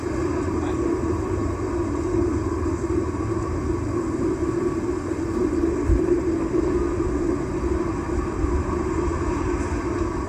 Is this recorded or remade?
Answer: recorded